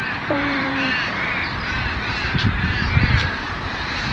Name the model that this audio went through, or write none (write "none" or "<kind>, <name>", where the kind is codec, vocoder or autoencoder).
vocoder, BigVGAN v2